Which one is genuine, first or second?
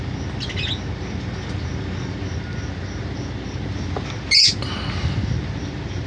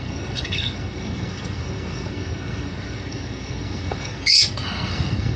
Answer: first